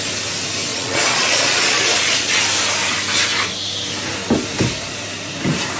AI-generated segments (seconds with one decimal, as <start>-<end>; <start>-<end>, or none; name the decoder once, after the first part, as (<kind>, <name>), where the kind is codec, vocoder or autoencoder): 0.7-2.4 (vocoder, Vocos)